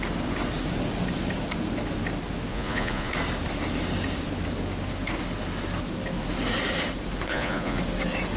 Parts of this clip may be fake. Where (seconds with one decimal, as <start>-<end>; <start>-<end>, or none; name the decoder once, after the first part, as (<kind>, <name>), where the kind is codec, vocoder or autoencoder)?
2.5-3.1 (vocoder, Vocos); 7.3-7.8